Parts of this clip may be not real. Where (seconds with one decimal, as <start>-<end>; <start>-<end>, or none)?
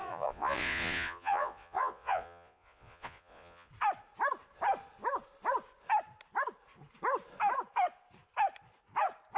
0.0-3.7